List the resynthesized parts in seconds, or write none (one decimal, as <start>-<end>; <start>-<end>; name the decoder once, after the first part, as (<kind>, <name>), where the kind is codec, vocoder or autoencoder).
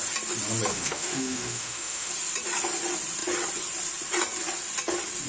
0.7-2.1 (autoencoder, DAC-VAE)